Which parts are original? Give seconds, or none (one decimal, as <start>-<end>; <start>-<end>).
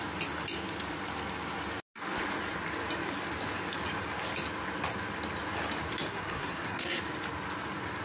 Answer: 0.0-6.1; 7.0-8.0